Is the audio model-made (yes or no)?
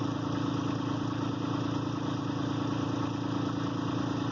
no